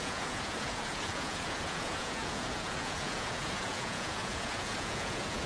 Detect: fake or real fake